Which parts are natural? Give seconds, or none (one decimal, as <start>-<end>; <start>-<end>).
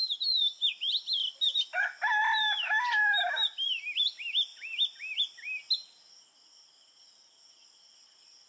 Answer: 0.0-8.5